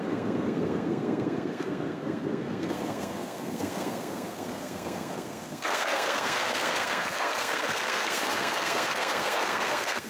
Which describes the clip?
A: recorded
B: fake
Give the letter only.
B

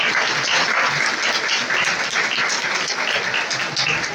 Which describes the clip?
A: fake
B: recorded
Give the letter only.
B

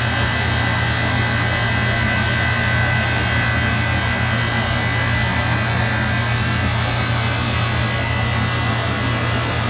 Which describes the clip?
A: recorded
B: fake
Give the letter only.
A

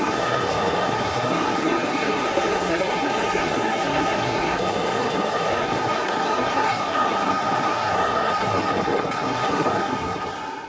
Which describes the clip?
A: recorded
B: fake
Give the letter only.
B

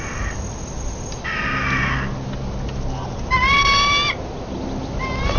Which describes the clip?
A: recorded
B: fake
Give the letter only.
A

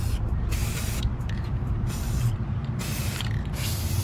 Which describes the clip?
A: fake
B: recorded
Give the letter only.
A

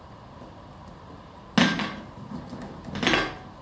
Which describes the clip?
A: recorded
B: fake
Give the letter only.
A